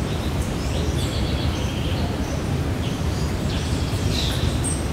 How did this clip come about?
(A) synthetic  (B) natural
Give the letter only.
A